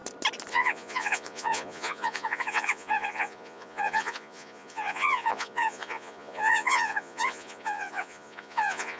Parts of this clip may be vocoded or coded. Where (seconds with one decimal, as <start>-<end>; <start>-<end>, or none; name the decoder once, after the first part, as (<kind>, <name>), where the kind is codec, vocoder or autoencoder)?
0.5-9.0 (vocoder, Vocos)